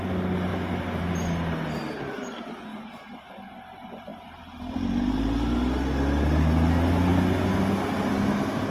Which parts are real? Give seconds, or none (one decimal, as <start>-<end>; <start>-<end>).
0.0-8.7